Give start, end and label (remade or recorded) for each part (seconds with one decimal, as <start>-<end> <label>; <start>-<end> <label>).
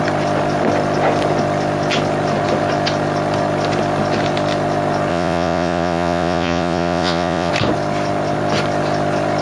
0.0-5.1 recorded; 5.1-7.5 remade; 7.5-9.4 recorded